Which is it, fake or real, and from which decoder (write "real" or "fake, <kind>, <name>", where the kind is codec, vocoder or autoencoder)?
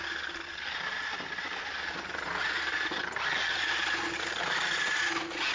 real